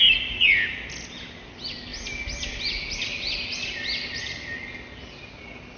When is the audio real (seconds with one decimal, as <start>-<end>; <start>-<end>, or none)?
0.0-5.8